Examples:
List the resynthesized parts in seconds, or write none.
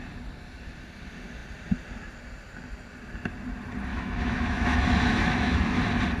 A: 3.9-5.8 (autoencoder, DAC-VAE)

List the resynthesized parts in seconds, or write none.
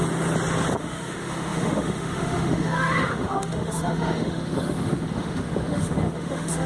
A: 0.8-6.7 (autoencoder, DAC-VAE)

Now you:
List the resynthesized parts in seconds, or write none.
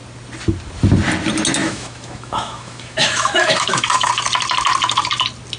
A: 1.6-4.1 (autoencoder, DAC-VAE)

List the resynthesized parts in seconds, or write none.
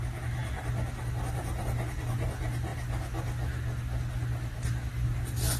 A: none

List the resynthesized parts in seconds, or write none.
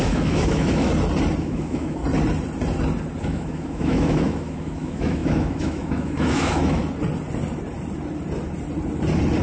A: 0.0-0.9 (autoencoder, DAC-VAE); 1.4-2.0; 3.2-6.8